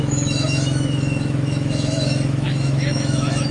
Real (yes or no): no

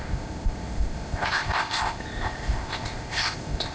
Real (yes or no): no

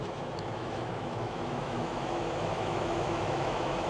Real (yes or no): no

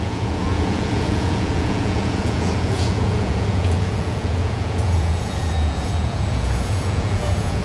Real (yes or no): no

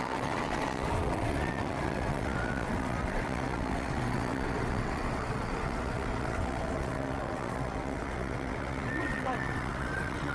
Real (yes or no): no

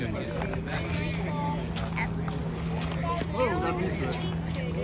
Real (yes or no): yes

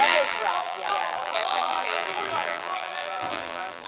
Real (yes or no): no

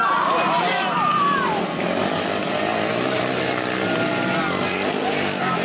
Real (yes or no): yes